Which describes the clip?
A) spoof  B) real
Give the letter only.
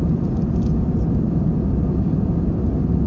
B